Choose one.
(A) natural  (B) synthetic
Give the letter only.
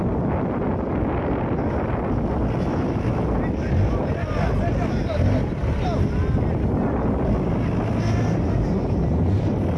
A